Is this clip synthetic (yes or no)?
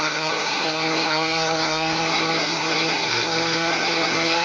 yes